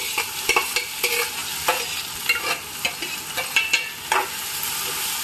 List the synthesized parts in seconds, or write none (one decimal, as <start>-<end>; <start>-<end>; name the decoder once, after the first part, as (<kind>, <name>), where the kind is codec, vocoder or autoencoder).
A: none